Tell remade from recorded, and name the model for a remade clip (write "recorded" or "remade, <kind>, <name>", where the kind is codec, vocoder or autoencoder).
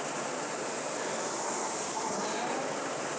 recorded